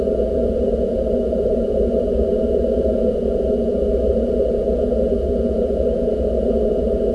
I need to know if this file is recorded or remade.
remade